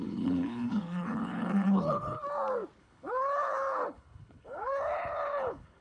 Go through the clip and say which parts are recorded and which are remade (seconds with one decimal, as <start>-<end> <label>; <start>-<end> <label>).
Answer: 0.0-2.2 remade; 2.2-2.8 recorded; 2.8-5.8 remade